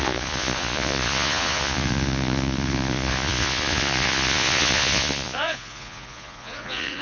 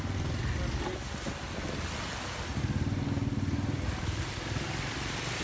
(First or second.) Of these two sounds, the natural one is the second